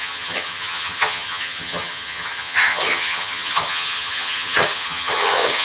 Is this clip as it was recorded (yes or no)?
no